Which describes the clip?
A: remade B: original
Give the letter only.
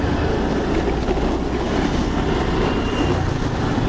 B